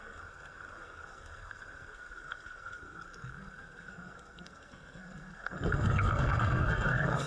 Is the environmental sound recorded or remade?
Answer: remade